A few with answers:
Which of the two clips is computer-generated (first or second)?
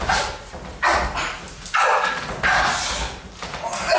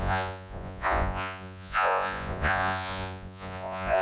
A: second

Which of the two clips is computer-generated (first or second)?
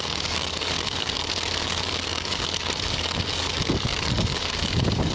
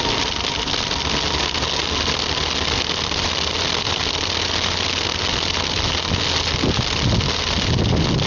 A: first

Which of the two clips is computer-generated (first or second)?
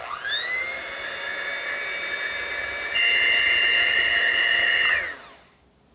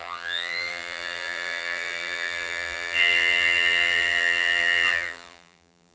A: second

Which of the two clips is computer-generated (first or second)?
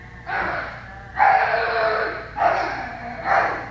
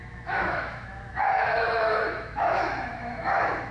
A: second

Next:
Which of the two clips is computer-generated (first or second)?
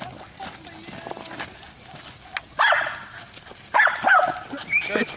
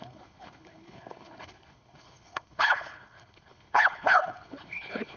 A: second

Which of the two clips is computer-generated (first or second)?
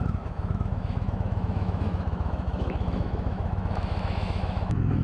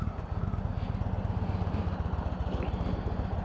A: first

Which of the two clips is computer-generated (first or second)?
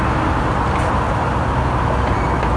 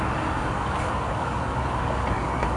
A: second